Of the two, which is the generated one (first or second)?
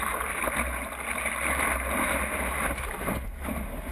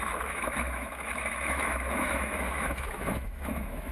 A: second